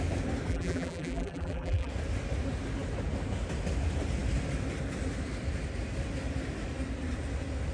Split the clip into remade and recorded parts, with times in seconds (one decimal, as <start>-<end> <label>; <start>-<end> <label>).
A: 0.0-0.5 recorded; 0.5-1.9 remade; 1.9-7.7 recorded